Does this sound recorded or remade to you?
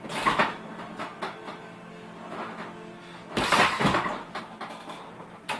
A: recorded